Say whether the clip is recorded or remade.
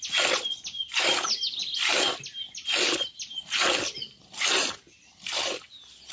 recorded